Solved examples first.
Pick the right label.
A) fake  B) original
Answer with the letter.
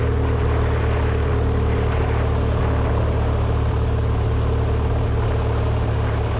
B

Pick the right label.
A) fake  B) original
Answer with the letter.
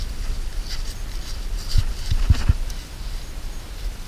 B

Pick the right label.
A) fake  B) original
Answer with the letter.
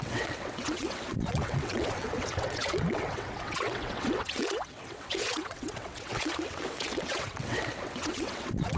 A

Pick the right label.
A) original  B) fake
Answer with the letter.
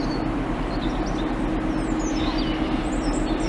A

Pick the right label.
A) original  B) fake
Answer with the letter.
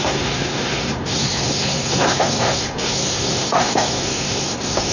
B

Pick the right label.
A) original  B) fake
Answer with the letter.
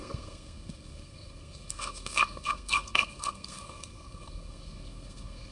B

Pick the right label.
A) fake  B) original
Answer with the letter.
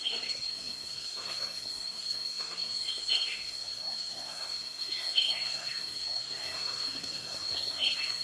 A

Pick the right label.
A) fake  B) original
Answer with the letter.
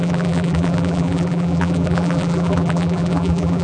A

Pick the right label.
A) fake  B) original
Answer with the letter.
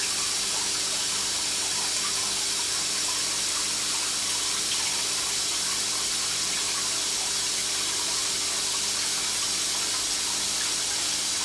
B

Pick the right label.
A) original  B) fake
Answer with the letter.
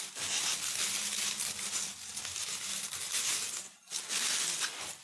A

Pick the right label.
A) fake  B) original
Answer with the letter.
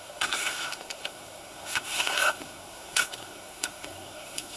A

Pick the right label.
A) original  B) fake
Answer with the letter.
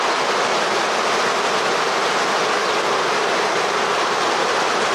A